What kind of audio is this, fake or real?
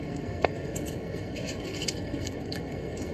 fake